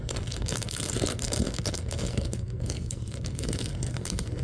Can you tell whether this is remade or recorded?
remade